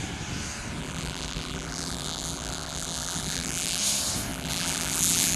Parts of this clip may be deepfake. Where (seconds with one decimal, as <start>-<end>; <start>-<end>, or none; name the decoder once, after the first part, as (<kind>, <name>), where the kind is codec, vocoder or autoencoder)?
0.8-3.8 (vocoder, BigVGAN v2); 4.3-5.4